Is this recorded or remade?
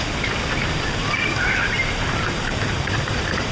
remade